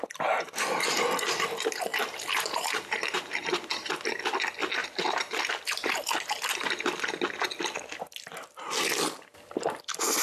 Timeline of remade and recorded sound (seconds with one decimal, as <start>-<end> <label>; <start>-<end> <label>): 0.0-1.9 recorded; 1.9-4.0 remade; 4.0-4.8 recorded; 4.8-5.4 remade; 5.4-10.2 recorded